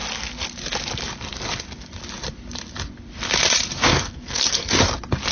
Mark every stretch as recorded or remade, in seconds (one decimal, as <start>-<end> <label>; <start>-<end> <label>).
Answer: 0.0-3.9 recorded; 3.9-4.7 remade; 4.7-5.3 recorded

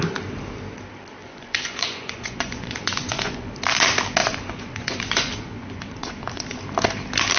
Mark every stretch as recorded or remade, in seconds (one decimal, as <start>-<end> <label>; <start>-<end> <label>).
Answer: 0.0-1.2 recorded; 1.2-3.5 remade; 3.5-4.2 recorded; 4.2-6.6 remade; 6.6-7.4 recorded

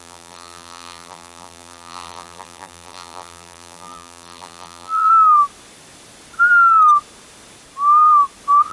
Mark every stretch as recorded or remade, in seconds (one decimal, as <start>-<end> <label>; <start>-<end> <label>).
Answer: 0.0-5.1 remade; 5.1-8.7 recorded